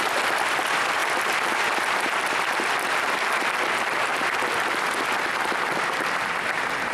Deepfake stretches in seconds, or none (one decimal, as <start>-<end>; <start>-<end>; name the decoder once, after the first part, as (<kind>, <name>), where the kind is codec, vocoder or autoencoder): none

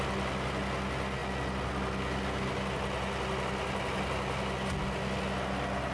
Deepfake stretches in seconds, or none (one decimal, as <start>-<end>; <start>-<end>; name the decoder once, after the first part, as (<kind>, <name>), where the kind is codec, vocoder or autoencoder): none